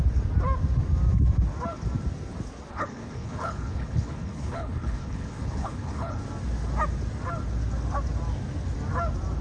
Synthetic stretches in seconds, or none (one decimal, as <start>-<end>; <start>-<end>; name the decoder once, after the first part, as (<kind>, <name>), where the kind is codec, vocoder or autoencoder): 2.7-6.2 (codec, HILCodec)